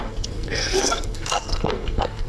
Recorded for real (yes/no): no